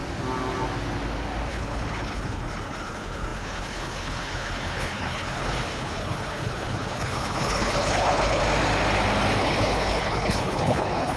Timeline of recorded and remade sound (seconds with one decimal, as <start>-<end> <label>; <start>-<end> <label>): 0.0-1.5 recorded; 1.5-8.4 remade; 8.4-9.4 recorded; 9.4-11.2 remade